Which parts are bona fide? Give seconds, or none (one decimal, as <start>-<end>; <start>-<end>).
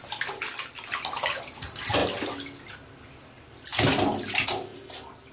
0.0-5.3